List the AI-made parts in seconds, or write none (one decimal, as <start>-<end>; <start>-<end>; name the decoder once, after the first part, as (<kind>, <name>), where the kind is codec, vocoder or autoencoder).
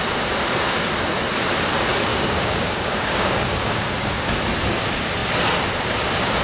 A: 2.1-4.3 (codec, DAC)